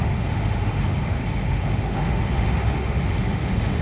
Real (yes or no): no